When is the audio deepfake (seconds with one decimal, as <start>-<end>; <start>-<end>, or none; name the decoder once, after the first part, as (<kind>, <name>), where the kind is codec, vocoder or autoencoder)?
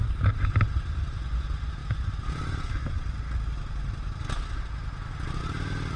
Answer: none